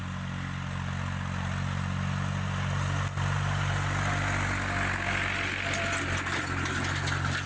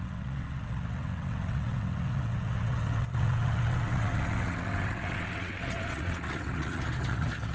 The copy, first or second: second